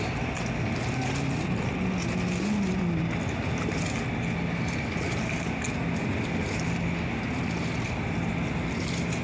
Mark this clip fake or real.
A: real